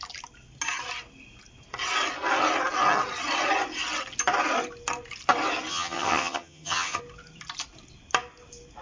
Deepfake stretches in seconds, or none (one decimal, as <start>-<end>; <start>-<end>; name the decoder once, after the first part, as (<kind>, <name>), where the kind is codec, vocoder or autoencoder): 5.7-7.0 (vocoder, HiFi-GAN)